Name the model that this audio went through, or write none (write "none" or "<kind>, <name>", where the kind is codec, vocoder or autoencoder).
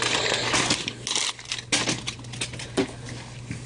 none